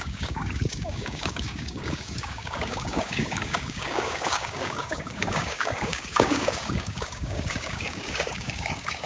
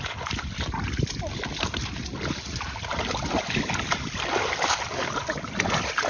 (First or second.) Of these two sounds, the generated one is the first